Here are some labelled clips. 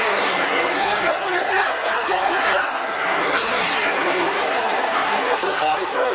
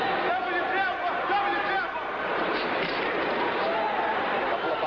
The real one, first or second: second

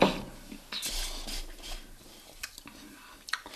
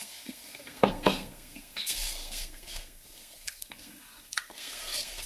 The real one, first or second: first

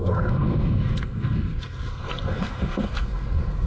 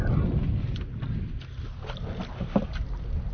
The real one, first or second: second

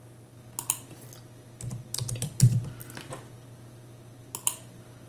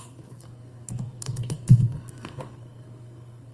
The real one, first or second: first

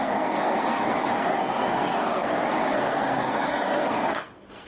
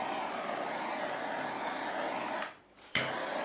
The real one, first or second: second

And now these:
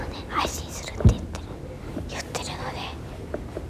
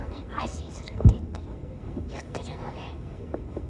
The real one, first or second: first